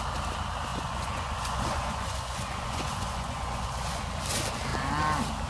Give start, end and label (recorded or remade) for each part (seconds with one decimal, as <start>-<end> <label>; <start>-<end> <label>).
0.0-0.7 recorded; 0.7-4.0 remade; 4.0-5.5 recorded